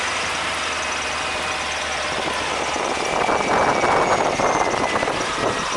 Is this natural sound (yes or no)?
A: yes